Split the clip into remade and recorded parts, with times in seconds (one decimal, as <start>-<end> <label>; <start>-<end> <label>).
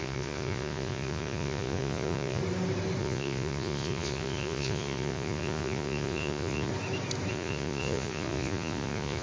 0.0-2.4 remade; 2.4-3.0 recorded; 3.0-6.7 remade; 6.7-7.3 recorded; 7.3-9.2 remade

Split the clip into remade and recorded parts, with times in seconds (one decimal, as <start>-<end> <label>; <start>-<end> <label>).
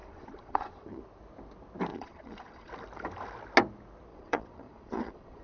0.0-1.0 remade; 1.0-1.9 recorded; 1.9-2.7 remade; 2.7-4.1 recorded; 4.1-5.4 remade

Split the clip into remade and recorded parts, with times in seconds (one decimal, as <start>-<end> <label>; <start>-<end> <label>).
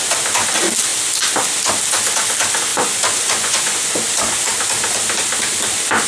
0.0-2.7 recorded; 2.7-3.9 remade; 3.9-6.1 recorded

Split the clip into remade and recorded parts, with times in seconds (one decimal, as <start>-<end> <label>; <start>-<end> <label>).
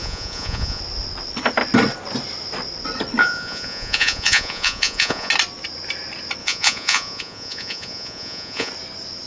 0.0-0.8 remade; 0.8-3.2 recorded; 3.2-5.3 remade; 5.3-6.4 recorded; 6.4-8.7 remade; 8.7-9.3 recorded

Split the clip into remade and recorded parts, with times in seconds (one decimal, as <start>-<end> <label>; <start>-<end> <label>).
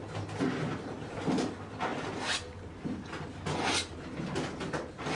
0.0-5.2 recorded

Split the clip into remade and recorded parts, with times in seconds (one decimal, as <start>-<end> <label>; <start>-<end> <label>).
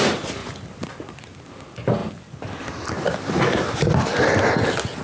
0.0-5.0 recorded